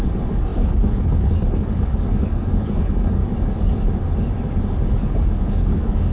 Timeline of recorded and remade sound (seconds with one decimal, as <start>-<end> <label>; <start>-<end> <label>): 0.0-3.2 remade; 3.2-5.2 recorded; 5.2-6.1 remade